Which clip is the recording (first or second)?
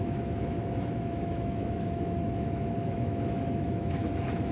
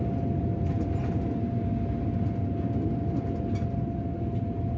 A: second